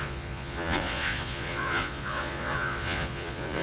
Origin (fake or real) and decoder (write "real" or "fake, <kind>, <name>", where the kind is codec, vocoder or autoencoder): fake, vocoder, Vocos